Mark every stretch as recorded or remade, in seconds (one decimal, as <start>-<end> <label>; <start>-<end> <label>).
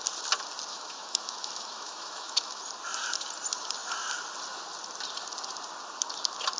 0.0-0.7 recorded; 0.7-2.6 remade; 2.6-6.6 recorded